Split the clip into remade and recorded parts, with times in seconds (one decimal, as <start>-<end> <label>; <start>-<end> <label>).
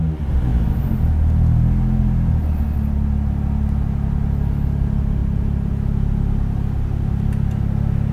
0.0-5.2 recorded; 5.2-5.7 remade; 5.7-8.1 recorded